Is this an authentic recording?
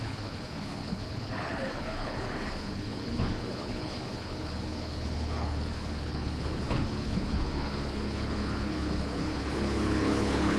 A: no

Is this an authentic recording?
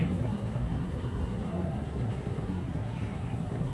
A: no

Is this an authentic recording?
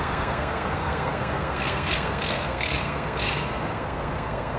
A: no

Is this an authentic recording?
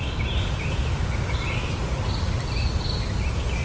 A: yes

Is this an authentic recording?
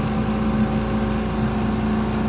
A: yes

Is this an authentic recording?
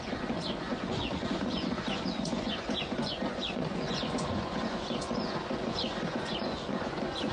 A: no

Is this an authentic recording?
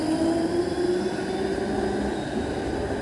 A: yes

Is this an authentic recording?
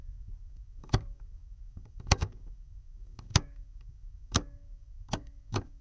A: no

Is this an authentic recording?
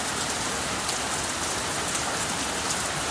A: yes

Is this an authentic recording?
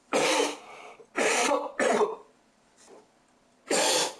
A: no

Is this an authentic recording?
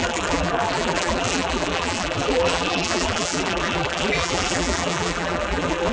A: no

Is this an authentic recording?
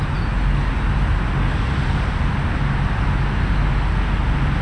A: yes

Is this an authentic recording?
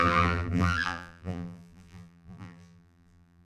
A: no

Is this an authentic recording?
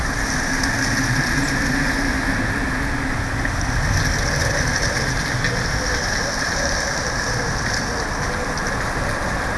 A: yes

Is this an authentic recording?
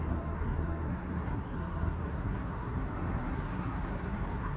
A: no